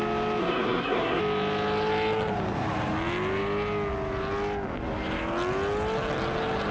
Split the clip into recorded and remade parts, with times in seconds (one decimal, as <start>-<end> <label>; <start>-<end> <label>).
0.0-0.4 recorded; 0.4-1.2 remade; 1.2-6.7 recorded